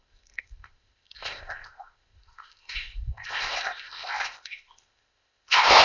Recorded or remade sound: remade